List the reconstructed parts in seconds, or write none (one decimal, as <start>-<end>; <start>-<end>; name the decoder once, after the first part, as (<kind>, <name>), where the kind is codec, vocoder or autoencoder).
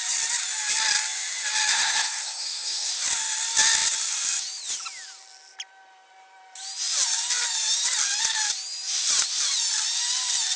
1.7-2.9 (codec, SNAC)